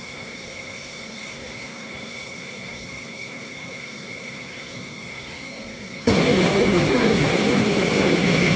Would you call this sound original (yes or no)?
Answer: no